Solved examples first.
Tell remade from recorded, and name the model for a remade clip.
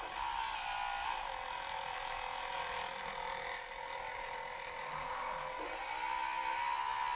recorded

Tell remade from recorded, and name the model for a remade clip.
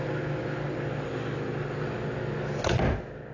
recorded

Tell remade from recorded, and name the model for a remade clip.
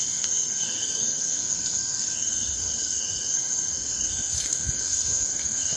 remade, codec, SNAC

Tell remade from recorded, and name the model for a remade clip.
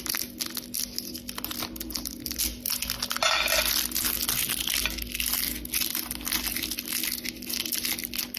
recorded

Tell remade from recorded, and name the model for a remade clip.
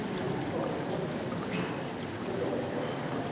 recorded